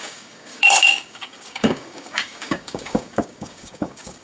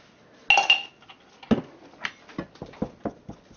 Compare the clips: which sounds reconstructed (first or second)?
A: first